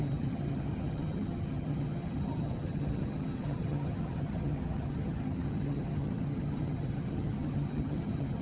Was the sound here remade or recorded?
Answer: remade